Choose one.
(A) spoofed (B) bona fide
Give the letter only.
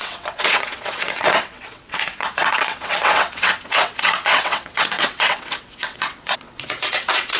A